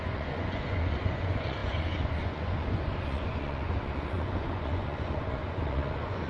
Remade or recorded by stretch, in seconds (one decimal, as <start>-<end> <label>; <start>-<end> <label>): 0.0-6.3 remade